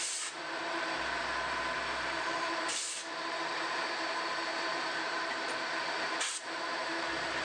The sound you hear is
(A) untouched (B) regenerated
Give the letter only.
B